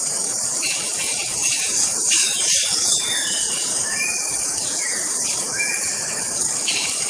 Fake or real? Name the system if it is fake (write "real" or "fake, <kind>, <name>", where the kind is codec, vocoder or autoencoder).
fake, codec, DAC